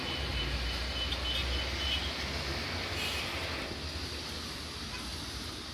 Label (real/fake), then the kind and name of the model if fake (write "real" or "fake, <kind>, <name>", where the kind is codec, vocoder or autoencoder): real